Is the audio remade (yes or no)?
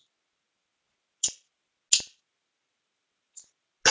no